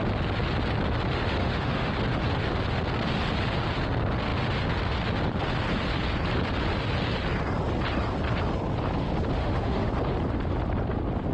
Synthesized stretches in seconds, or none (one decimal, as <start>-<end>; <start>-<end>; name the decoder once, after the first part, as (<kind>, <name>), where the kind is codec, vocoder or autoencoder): 1.4-1.9 (autoencoder, DAC-VAE); 9.4-9.9